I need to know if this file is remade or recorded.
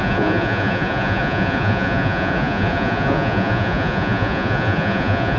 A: remade